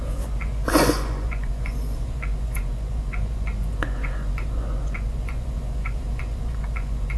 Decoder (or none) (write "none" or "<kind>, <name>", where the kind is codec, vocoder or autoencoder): vocoder, Vocos